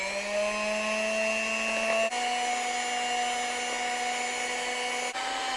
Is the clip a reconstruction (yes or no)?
no